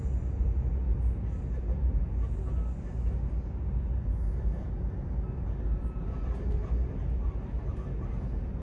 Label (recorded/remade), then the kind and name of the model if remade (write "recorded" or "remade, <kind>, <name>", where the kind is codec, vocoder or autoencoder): recorded